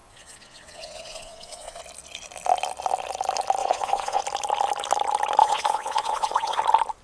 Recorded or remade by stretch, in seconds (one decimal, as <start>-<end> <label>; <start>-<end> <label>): 0.0-1.8 remade; 1.8-3.6 recorded; 3.6-4.2 remade; 4.2-5.4 recorded; 5.4-6.6 remade; 6.6-7.0 recorded